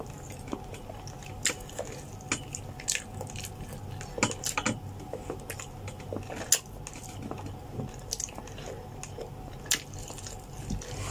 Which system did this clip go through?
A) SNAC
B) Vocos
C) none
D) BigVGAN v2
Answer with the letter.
C